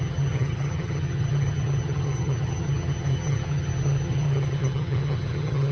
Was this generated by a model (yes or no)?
yes